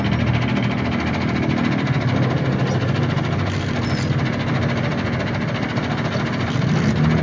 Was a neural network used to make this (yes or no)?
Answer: no